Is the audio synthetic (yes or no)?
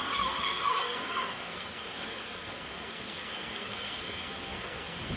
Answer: yes